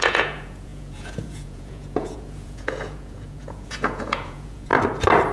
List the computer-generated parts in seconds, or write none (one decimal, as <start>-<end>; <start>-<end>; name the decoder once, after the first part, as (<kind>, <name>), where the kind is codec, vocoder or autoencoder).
0.0-4.7 (vocoder, Vocos)